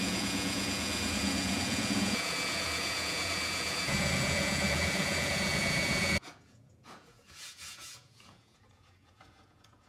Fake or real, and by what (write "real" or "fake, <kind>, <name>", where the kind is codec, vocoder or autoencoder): fake, vocoder, Vocos